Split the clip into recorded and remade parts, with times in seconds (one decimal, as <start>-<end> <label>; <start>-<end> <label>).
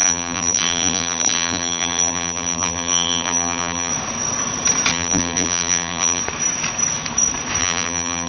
0.0-3.9 remade; 3.9-4.9 recorded; 4.9-6.2 remade; 6.2-7.6 recorded; 7.6-8.3 remade